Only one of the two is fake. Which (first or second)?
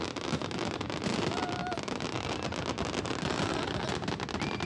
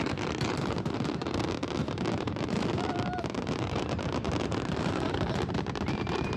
second